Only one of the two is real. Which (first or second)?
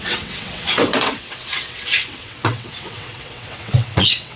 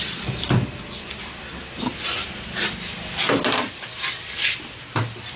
second